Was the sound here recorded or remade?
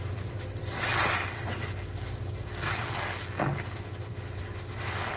recorded